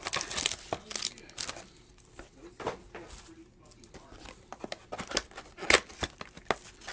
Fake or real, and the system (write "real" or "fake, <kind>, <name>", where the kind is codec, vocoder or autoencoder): real